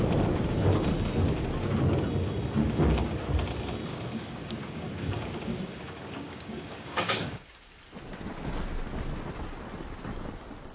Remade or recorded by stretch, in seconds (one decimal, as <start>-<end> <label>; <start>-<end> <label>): 0.0-2.6 recorded; 2.6-3.2 remade; 3.2-3.9 recorded; 3.9-7.8 remade; 7.8-10.7 recorded